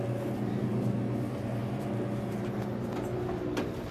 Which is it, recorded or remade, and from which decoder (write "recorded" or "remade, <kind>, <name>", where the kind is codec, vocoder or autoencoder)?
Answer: recorded